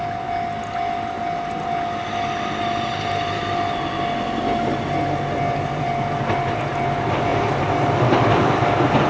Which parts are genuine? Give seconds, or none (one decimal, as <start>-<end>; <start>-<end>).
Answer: 0.0-7.3; 8.7-9.1